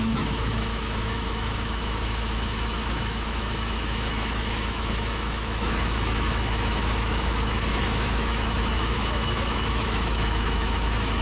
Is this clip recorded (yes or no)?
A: no